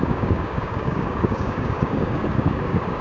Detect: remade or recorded remade